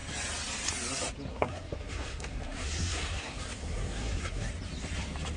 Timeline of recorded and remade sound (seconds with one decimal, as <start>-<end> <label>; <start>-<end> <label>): 0.0-1.3 recorded; 1.3-4.5 remade; 4.5-5.4 recorded